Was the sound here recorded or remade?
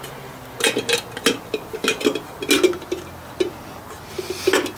recorded